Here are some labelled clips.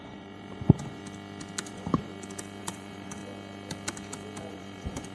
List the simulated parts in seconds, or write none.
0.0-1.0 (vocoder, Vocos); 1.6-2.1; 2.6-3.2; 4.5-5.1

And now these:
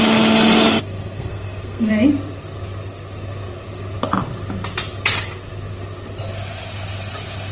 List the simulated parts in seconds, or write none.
0.8-1.9 (codec, SNAC)

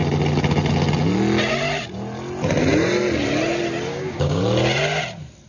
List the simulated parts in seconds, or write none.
3.9-4.4 (codec, DAC)

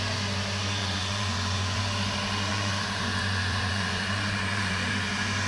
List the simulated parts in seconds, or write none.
0.8-1.8 (vocoder, Vocos); 2.5-4.9